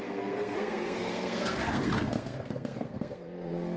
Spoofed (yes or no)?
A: yes